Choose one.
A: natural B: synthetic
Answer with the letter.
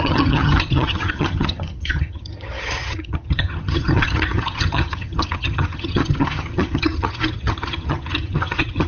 B